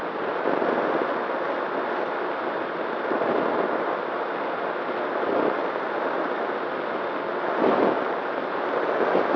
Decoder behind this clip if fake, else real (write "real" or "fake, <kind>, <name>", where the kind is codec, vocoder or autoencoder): real